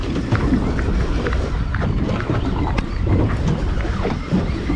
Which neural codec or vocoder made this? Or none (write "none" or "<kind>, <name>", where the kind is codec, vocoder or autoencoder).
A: none